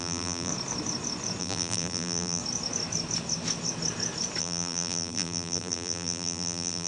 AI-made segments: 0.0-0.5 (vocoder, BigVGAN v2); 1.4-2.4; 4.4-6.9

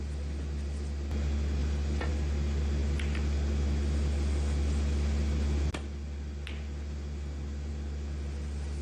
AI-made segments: none

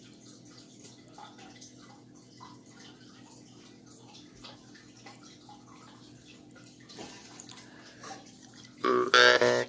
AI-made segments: none

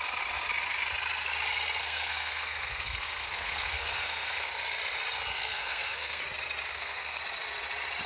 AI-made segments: 1.8-4.5 (codec, SNAC); 5.3-6.2; 6.7-7.2

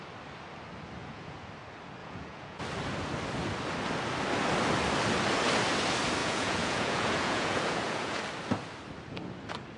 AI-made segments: 1.0-1.5 (vocoder, Vocos); 2.0-2.6; 6.2-8.2

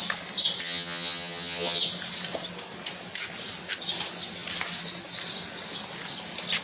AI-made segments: 0.6-1.8 (vocoder, HiFi-GAN)

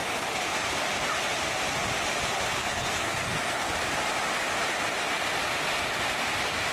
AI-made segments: 2.6-3.7 (codec, SNAC)

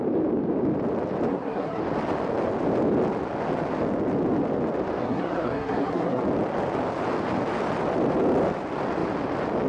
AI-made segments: 1.3-1.8 (codec, SNAC); 5.0-6.2